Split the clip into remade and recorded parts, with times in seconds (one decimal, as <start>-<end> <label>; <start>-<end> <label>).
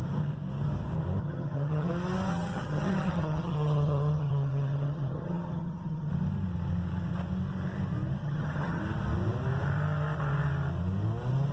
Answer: 0.0-1.2 recorded; 1.2-1.9 remade; 1.9-2.3 recorded; 2.3-6.1 remade; 6.1-8.2 recorded; 8.2-8.8 remade; 8.8-11.5 recorded